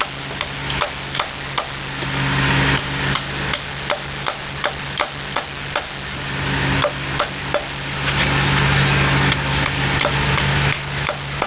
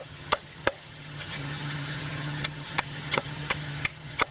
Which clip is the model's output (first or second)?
second